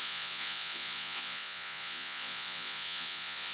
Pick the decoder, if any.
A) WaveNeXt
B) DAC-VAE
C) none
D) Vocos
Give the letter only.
D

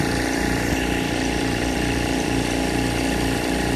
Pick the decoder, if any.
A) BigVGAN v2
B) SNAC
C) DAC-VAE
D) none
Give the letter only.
A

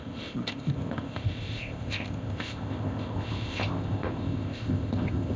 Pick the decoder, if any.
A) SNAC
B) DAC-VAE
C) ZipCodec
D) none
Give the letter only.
C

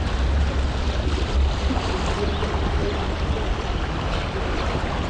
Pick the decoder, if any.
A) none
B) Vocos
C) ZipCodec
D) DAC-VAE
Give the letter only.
A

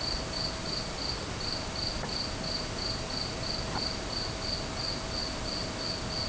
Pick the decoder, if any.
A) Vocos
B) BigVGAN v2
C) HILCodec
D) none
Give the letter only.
D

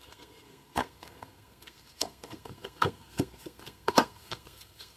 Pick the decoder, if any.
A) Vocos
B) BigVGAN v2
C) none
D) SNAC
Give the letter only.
D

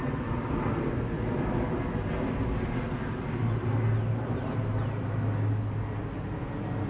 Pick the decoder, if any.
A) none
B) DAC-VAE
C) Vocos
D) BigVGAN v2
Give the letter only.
A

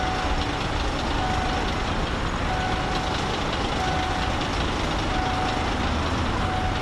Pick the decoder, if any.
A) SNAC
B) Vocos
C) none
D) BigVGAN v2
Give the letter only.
C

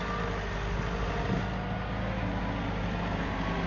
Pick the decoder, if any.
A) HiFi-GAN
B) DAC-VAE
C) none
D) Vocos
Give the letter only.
C